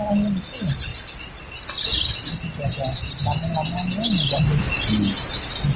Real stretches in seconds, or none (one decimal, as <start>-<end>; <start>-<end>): 0.0-5.8